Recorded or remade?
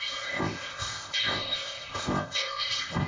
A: remade